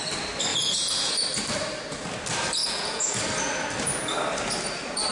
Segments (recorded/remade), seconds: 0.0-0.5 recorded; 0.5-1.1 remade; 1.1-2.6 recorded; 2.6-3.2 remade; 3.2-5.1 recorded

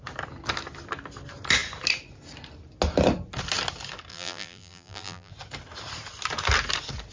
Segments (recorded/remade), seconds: 0.0-4.1 recorded; 4.1-5.3 remade; 5.3-7.1 recorded

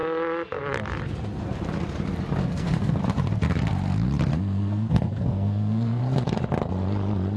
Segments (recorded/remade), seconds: 0.0-2.4 recorded; 2.4-3.0 remade; 3.0-4.3 recorded; 4.3-6.0 remade; 6.0-7.4 recorded

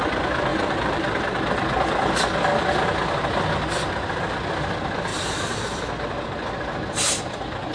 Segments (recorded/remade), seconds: 0.0-0.5 recorded; 0.5-1.2 remade; 1.2-5.1 recorded; 5.1-5.8 remade; 5.8-7.7 recorded

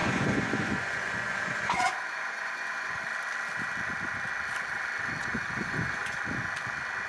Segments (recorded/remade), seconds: 0.0-3.0 remade; 3.0-5.2 recorded; 5.2-6.2 remade; 6.2-7.1 recorded

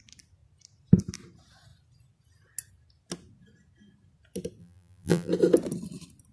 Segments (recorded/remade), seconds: 0.0-4.6 recorded; 4.6-5.3 remade; 5.3-6.3 recorded

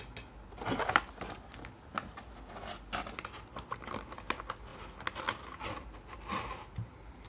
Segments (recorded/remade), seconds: 0.0-7.3 recorded

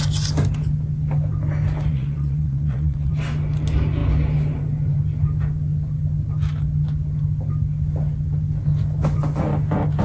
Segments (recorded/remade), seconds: 0.0-1.9 recorded; 1.9-3.1 remade; 3.1-10.0 recorded